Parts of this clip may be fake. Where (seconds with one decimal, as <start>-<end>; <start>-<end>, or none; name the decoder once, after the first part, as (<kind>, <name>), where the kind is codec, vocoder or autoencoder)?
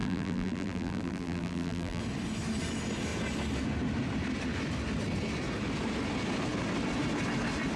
0.0-2.0 (vocoder, BigVGAN v2)